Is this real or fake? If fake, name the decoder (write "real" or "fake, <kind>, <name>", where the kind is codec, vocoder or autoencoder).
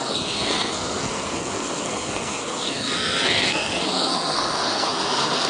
fake, codec, SNAC